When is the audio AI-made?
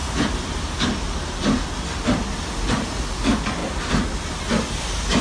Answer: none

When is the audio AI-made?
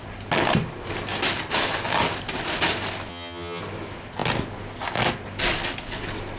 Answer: 3.1-3.6 (vocoder, HiFi-GAN)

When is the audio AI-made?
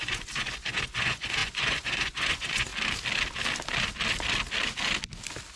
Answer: 0.0-2.7 (vocoder, Vocos)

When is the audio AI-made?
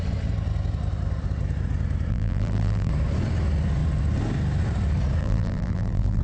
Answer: 2.1-2.9 (vocoder, BigVGAN v2); 5.2-6.2